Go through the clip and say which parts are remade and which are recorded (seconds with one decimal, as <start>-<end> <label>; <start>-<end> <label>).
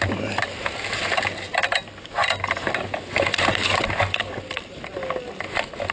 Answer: 0.0-5.9 recorded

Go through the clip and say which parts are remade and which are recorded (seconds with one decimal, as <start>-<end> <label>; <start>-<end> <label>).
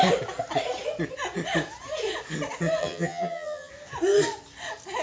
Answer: 0.0-2.8 recorded; 2.8-3.7 remade; 3.7-5.0 recorded